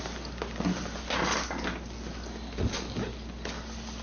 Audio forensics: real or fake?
real